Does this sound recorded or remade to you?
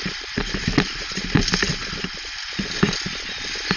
recorded